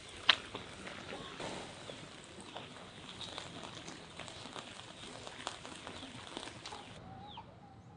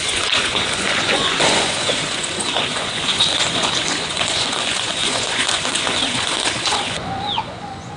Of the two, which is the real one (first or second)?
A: first